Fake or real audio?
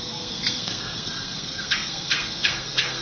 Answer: fake